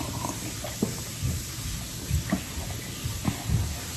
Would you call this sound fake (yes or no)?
no